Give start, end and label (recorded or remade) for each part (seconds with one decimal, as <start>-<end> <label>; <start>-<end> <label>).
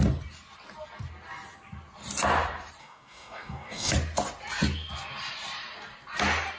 0.0-2.8 recorded; 2.8-3.9 remade; 3.9-6.6 recorded